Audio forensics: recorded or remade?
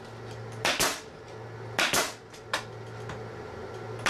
recorded